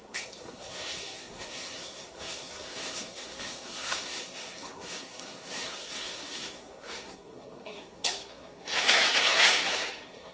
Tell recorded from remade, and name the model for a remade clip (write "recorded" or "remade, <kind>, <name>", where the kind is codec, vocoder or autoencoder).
remade, codec, SNAC